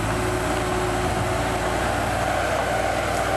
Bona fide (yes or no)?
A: yes